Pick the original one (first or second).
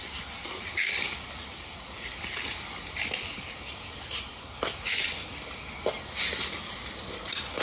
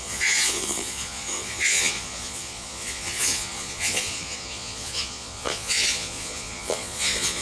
first